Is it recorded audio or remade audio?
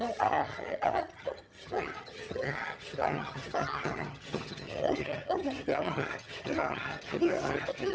remade